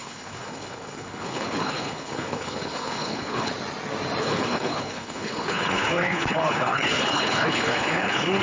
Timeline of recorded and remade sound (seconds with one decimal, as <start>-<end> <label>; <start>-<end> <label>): 0.0-3.5 remade; 3.5-4.2 recorded; 4.2-8.4 remade